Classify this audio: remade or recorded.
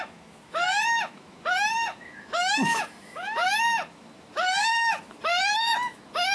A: remade